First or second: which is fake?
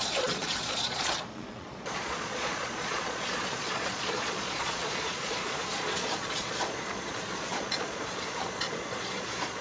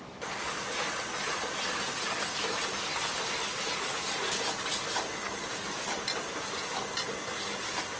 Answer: first